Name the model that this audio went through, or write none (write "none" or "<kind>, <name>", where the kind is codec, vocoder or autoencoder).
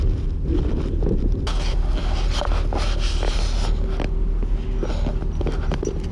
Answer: none